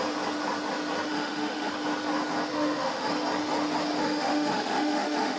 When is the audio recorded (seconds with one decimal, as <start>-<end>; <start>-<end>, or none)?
0.0-1.1; 1.7-2.5; 3.1-4.0